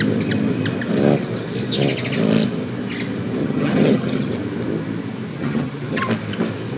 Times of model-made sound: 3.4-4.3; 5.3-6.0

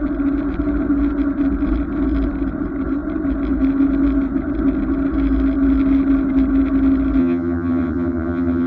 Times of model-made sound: 7.2-8.7

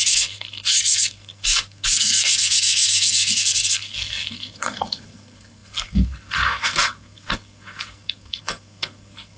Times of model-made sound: 0.0-9.4

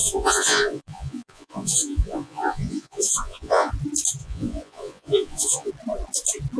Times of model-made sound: 0.0-3.7; 4.2-5.7

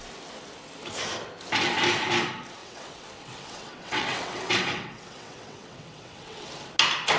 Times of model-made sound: 2.6-6.5

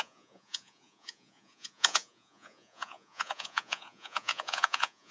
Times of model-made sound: 0.0-5.1

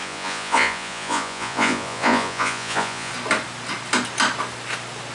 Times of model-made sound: 0.0-3.1

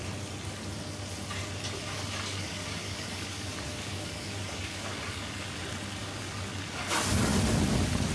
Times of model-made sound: 1.8-5.6; 6.0-6.8